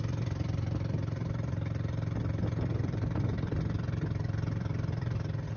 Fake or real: fake